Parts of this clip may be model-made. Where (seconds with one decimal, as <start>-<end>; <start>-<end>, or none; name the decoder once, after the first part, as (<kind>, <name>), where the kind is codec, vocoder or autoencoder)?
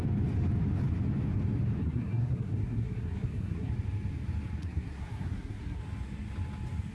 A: 1.8-3.7 (codec, SNAC); 4.6-5.8